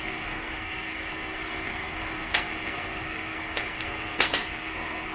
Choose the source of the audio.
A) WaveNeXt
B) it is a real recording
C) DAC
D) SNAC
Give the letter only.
D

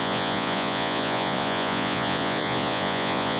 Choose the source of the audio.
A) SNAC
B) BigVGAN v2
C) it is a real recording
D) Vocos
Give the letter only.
D